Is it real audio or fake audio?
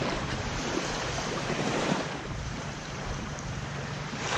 fake